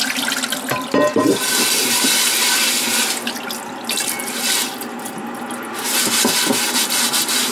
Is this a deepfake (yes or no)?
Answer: no